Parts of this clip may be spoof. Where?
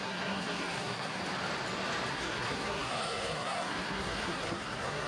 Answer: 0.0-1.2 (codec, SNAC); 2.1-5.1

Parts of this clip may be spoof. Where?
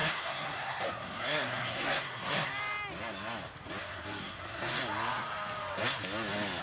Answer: 0.0-2.5 (codec, SNAC); 3.8-4.8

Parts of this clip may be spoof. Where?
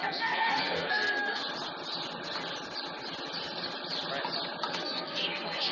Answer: 0.0-1.4 (codec, SNAC); 4.7-5.7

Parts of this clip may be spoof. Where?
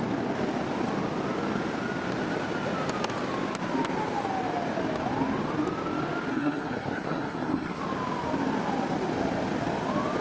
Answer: 6.3-7.8 (codec, SNAC)